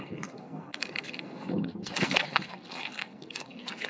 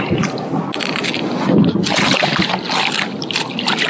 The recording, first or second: second